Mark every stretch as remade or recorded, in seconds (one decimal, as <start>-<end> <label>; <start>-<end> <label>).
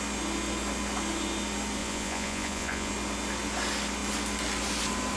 0.0-1.8 recorded; 1.8-2.9 remade; 2.9-5.2 recorded